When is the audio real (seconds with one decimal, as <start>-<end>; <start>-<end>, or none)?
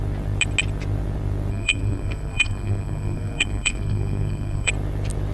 0.0-1.5; 4.7-5.3